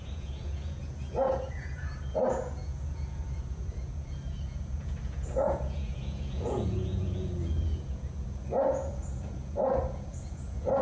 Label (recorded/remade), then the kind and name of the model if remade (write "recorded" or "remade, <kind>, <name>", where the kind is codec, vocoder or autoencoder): remade, vocoder, Vocos